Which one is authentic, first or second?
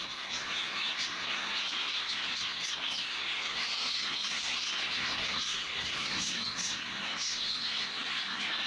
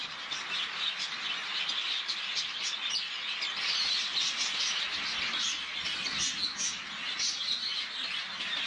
second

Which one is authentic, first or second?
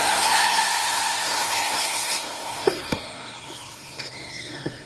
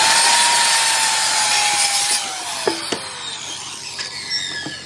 second